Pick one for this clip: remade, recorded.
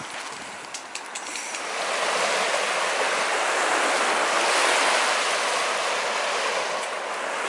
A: recorded